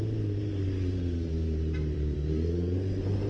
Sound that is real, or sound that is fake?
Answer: fake